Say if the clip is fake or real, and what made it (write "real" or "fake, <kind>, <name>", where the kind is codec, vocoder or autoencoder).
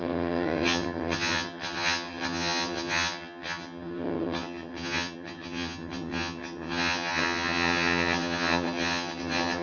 fake, vocoder, HiFi-GAN